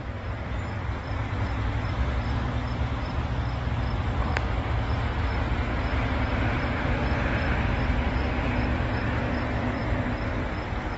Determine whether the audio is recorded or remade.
remade